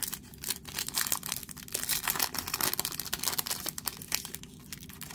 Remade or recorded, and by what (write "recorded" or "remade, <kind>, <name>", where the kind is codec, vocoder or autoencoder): recorded